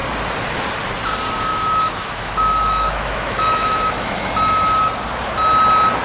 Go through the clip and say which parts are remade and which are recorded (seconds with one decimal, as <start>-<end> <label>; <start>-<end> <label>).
0.0-1.5 recorded; 1.5-4.3 remade; 4.3-6.0 recorded

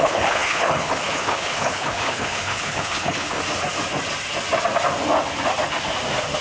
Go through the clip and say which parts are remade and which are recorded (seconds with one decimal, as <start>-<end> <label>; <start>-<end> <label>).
0.0-3.4 remade; 3.4-6.4 recorded

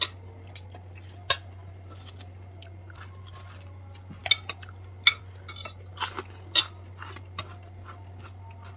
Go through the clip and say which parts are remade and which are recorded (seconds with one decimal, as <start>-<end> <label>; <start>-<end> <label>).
0.0-8.8 recorded

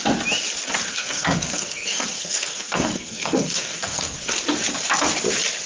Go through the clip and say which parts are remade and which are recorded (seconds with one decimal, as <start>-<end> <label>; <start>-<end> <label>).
0.0-0.9 recorded; 0.9-4.3 remade; 4.3-5.7 recorded

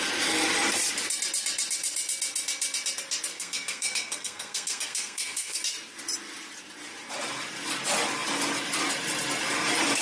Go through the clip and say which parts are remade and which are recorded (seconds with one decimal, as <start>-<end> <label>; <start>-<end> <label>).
0.0-3.3 recorded; 3.3-5.6 remade; 5.6-10.0 recorded

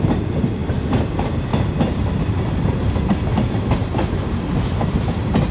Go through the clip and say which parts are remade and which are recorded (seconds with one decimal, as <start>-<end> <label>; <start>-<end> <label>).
0.0-5.5 recorded